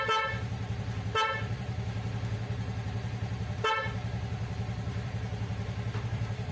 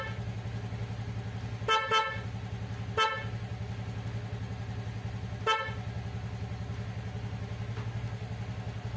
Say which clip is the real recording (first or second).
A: second